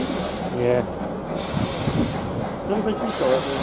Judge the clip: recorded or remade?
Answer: recorded